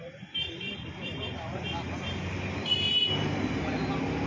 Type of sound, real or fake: real